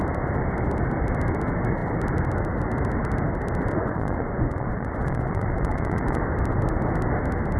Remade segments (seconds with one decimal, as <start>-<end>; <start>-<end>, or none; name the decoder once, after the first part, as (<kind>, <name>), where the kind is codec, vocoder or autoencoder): 3.7-6.2 (vocoder, Vocos)